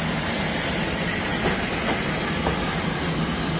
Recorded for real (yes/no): yes